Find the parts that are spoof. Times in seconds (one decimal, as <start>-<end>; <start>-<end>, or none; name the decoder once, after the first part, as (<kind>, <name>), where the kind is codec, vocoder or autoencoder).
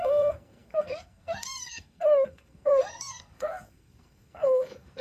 0.0-5.0 (codec, SNAC)